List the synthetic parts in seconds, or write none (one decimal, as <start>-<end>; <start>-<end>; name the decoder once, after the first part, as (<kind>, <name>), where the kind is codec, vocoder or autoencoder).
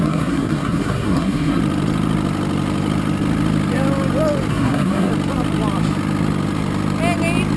0.0-1.6 (codec, SNAC); 4.5-5.1